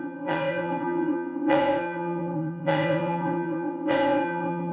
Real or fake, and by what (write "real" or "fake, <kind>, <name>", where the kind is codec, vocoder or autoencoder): fake, vocoder, WaveNeXt